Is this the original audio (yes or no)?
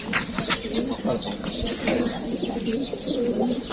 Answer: yes